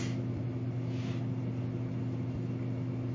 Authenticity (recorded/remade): recorded